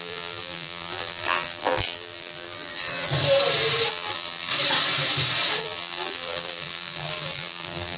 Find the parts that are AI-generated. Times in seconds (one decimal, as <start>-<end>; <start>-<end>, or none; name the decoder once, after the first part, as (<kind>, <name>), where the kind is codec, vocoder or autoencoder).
0.0-3.1 (vocoder, BigVGAN v2); 3.9-4.5; 5.6-8.0